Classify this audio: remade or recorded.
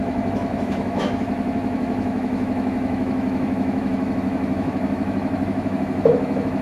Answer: remade